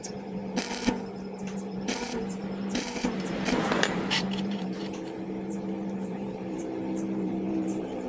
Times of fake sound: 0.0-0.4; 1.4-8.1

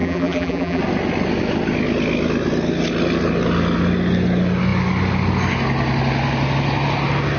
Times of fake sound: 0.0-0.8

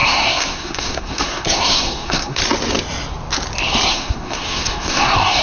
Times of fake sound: 0.0-2.4; 3.9-5.4

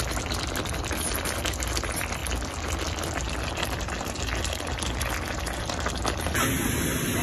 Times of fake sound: none

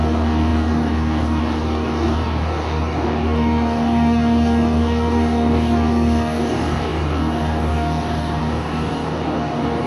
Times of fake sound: 0.0-9.9

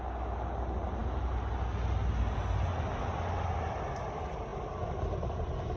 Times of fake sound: none

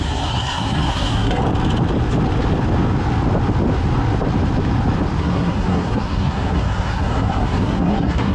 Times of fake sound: 0.0-1.4; 5.2-8.3

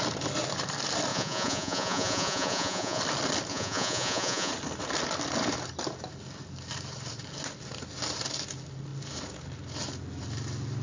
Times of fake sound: 1.1-3.0; 3.5-4.5